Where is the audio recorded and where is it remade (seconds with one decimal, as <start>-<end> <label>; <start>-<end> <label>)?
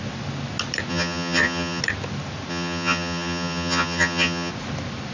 0.0-0.9 recorded; 0.9-1.8 remade; 1.8-2.5 recorded; 2.5-4.5 remade; 4.5-5.1 recorded